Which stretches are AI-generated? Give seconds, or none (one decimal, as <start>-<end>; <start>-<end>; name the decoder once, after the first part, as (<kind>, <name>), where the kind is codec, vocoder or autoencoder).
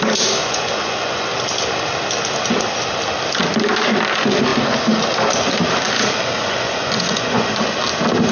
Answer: 0.4-1.3 (vocoder, Vocos); 6.4-7.5